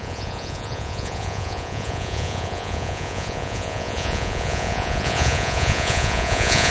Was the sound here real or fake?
fake